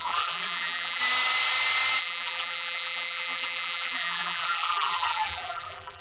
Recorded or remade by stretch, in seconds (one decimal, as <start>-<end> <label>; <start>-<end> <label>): 0.0-1.0 remade; 1.0-2.0 recorded; 2.0-6.0 remade